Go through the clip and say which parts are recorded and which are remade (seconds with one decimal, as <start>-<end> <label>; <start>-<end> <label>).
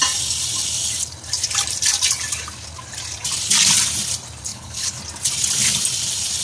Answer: 0.0-4.5 recorded; 4.5-5.0 remade; 5.0-6.4 recorded